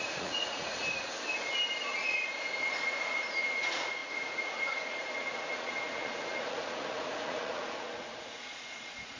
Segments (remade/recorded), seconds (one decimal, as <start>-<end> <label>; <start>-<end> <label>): 0.0-0.8 remade; 0.8-1.8 recorded; 1.8-9.2 remade